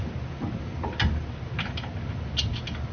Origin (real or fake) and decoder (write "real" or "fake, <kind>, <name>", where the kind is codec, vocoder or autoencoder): real